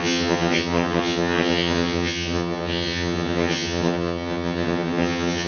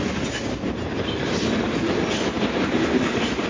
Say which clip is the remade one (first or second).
first